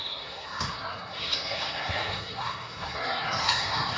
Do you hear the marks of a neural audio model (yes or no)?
yes